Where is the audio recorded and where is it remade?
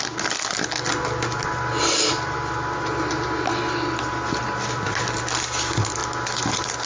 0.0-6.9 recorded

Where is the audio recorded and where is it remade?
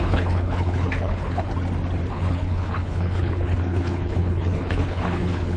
0.0-1.5 remade; 1.5-2.1 recorded; 2.1-5.6 remade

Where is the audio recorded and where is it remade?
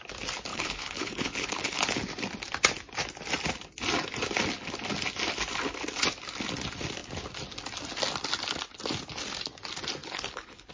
0.0-0.5 recorded; 0.5-2.0 remade; 2.0-10.0 recorded; 10.0-10.7 remade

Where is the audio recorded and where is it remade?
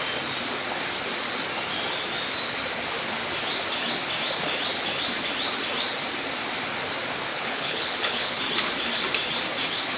0.0-7.3 recorded; 7.3-8.4 remade; 8.4-10.0 recorded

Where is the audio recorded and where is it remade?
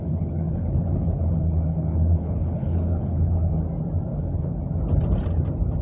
0.0-3.5 remade; 3.5-4.1 recorded; 4.1-4.6 remade; 4.6-5.8 recorded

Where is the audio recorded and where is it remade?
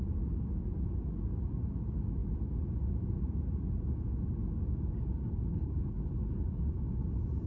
0.0-5.5 recorded; 5.5-6.0 remade; 6.0-7.5 recorded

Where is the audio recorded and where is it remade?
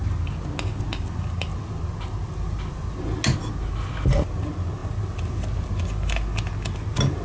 0.0-7.2 recorded